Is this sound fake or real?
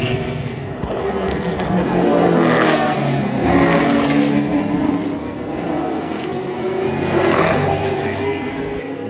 fake